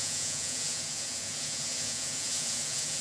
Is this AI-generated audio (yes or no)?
yes